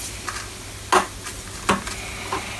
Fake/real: real